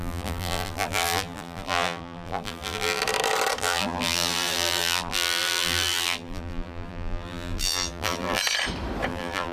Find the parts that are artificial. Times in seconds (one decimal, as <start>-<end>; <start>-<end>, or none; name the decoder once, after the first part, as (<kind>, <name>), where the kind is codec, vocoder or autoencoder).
0.0-3.0 (vocoder, BigVGAN v2); 3.6-8.4; 9.1-9.5